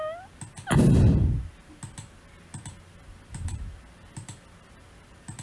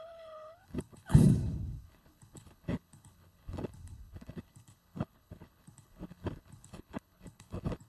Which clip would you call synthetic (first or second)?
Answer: second